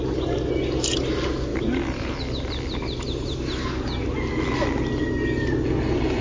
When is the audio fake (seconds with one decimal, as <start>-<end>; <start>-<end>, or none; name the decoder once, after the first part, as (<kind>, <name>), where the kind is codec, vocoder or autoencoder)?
none